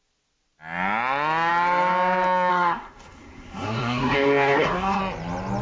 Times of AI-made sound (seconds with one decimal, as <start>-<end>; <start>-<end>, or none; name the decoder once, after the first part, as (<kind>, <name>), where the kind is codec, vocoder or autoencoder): 2.5-5.0 (codec, SNAC)